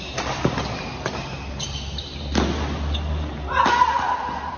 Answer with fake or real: real